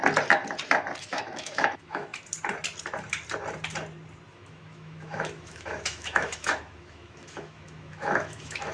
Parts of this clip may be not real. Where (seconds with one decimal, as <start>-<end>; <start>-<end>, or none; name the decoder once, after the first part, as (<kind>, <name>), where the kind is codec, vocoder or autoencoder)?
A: 1.0-2.1 (autoencoder, DAC-VAE); 4.3-8.7